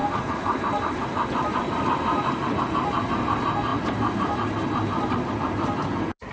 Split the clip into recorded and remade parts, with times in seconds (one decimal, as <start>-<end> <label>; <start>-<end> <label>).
0.0-6.3 recorded